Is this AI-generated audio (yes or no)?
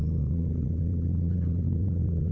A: yes